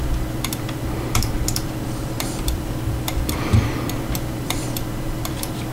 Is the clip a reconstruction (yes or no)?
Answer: yes